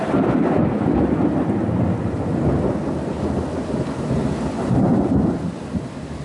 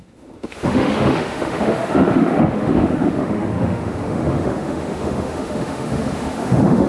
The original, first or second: first